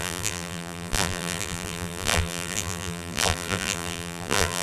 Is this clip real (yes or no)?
no